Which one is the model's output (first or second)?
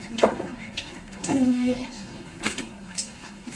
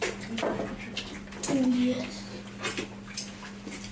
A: first